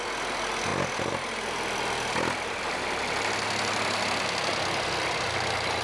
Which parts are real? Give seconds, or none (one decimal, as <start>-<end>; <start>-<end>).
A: 0.0-5.8